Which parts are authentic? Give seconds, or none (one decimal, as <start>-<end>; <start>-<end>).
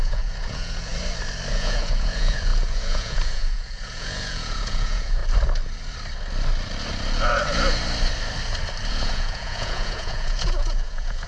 0.9-1.5; 5.2-8.9